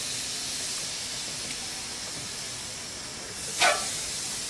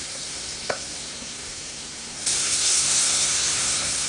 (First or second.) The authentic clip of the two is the first